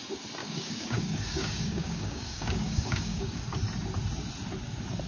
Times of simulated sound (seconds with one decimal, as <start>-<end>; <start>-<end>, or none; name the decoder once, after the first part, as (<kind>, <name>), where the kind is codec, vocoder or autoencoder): 0.4-3.4 (codec, DAC)